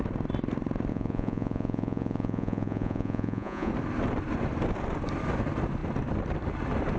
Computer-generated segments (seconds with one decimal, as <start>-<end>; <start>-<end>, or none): 0.9-3.7